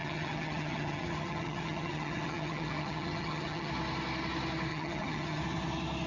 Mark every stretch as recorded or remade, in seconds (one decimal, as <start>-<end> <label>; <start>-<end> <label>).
0.0-3.7 remade; 3.7-4.7 recorded; 4.7-5.4 remade; 5.4-6.1 recorded